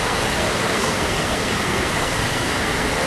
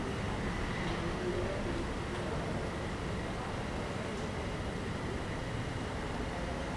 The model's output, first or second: first